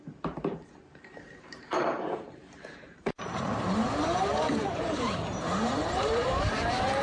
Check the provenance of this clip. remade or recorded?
remade